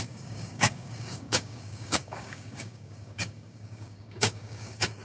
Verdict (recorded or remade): remade